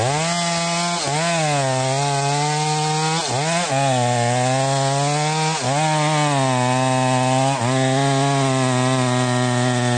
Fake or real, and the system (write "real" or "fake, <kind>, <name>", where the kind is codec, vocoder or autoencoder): real